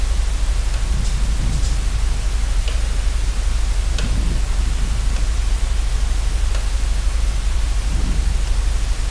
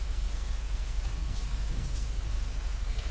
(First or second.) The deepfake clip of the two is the second